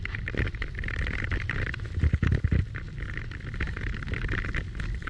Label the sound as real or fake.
real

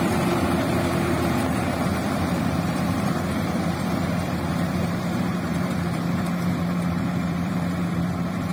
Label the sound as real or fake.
fake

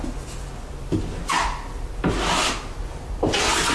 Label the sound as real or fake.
real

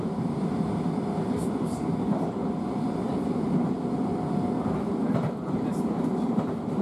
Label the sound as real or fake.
fake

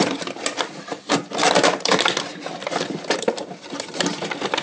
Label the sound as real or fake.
fake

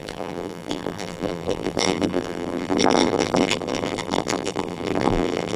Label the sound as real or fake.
fake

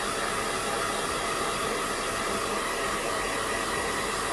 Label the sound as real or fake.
real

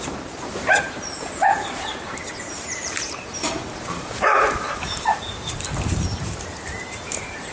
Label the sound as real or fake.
fake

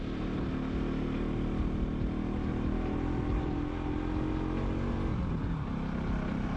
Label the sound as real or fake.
real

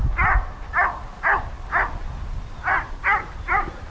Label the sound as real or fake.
real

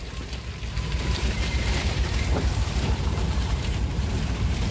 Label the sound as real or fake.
fake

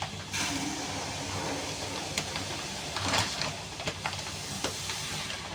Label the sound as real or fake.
real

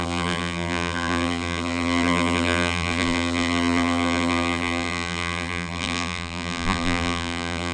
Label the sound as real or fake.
fake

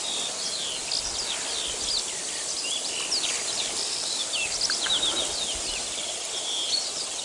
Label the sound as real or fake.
real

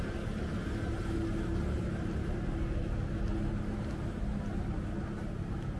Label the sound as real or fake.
real